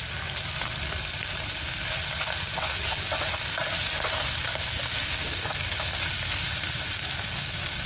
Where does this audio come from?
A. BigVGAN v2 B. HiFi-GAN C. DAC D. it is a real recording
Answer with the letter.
D